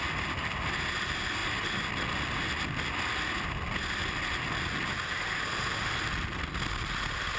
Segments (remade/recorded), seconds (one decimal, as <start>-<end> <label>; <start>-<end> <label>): 0.0-7.4 recorded